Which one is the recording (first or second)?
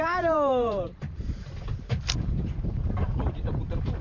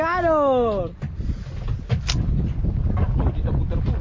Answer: second